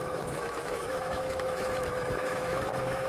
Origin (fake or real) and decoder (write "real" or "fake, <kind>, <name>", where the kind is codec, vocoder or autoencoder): fake, autoencoder, DAC-VAE